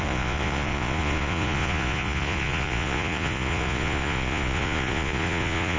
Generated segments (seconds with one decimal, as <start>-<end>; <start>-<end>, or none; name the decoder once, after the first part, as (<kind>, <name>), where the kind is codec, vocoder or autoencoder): 0.0-5.8 (vocoder, Vocos)